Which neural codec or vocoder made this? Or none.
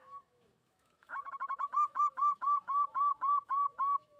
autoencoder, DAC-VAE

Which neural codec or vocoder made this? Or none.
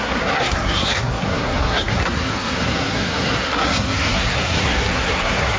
codec, SNAC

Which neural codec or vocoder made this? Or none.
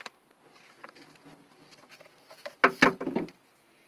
none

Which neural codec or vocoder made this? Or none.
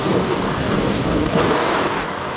codec, DAC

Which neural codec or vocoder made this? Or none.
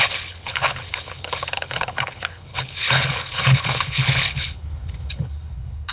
codec, HILCodec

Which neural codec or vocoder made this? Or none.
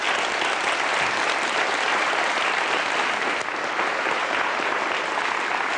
none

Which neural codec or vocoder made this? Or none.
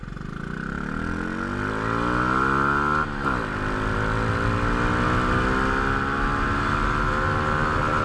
none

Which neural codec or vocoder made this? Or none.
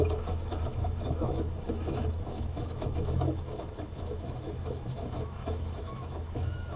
autoencoder, DAC-VAE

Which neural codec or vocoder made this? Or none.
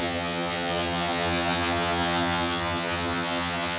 vocoder, HiFi-GAN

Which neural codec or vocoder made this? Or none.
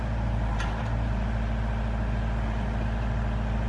none